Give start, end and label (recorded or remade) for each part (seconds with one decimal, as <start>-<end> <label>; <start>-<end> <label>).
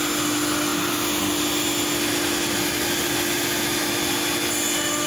0.0-5.1 recorded